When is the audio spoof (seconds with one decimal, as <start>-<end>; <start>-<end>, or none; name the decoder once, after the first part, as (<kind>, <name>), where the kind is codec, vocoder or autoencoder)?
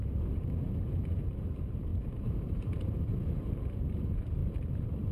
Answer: 0.0-5.1 (vocoder, BigVGAN v2)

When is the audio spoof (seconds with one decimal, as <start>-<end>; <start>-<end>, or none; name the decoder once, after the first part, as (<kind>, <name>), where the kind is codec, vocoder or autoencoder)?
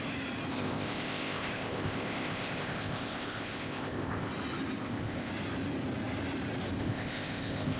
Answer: 0.5-4.3 (codec, ZipCodec); 4.8-5.3; 6.8-7.8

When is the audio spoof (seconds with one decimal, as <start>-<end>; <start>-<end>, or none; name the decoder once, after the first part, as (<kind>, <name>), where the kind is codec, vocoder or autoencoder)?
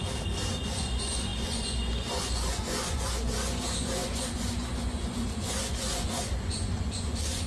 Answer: 0.6-7.5 (vocoder, Vocos)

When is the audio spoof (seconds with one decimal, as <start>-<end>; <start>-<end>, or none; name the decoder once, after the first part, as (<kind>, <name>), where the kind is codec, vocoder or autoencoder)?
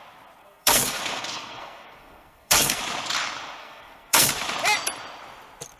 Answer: 0.4-2.8 (codec, SNAC); 3.6-4.3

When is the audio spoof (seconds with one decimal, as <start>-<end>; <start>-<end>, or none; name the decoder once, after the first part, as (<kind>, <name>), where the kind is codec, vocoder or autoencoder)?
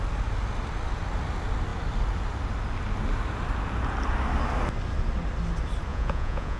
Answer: 5.9-6.6 (vocoder, Vocos)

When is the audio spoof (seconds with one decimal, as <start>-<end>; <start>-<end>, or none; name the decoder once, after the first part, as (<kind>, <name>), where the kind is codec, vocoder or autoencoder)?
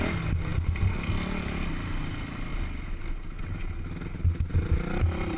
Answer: none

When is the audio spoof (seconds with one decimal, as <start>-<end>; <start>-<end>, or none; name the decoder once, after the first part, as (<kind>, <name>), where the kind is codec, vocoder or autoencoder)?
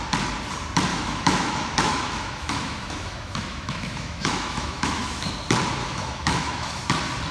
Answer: 0.9-5.3 (autoencoder, DAC-VAE); 5.8-6.8